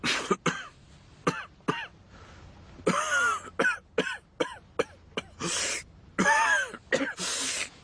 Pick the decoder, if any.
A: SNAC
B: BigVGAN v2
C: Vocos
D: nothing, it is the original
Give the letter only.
D